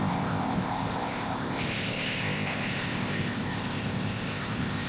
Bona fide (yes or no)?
no